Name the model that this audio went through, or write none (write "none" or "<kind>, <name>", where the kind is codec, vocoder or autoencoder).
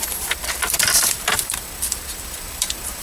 vocoder, BigVGAN v2